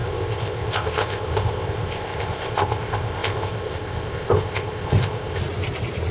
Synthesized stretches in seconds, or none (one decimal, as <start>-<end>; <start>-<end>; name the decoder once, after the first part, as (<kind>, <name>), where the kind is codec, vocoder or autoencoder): 0.0-5.4 (codec, ZipCodec)